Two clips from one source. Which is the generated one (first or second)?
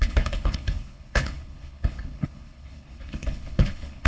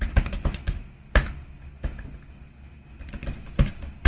first